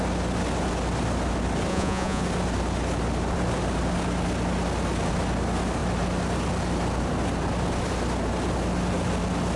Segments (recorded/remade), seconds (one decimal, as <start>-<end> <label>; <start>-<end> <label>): 0.0-1.7 recorded; 1.7-2.2 remade; 2.2-9.6 recorded